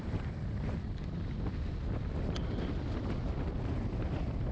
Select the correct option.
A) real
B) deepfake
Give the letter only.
A